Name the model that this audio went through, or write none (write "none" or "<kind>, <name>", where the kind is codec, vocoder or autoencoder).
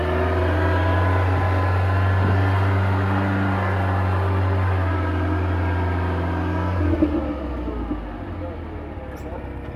none